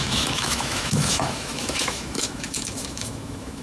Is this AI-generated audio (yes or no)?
yes